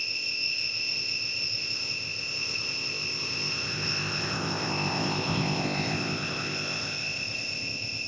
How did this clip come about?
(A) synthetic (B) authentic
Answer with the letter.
A